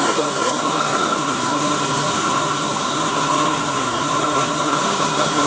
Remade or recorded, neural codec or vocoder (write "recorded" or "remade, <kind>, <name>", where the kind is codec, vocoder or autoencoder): remade, codec, SNAC